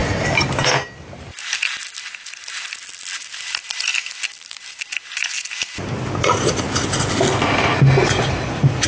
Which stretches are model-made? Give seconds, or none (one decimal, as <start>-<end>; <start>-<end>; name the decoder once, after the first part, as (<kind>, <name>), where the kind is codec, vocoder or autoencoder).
8.0-8.9 (vocoder, Vocos)